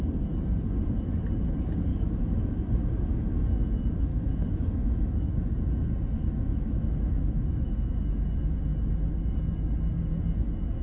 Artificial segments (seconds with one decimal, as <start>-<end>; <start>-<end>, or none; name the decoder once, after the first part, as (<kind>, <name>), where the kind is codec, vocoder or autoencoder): 1.9-3.4 (autoencoder, DAC-VAE); 4.1-5.5; 6.2-7.7